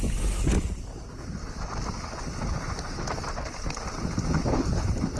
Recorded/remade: recorded